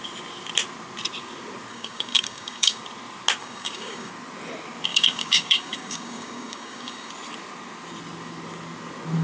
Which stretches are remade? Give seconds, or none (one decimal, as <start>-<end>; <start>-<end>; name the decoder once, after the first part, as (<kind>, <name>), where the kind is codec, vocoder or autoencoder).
1.7-2.8 (codec, DAC); 3.4-4.1; 4.9-7.1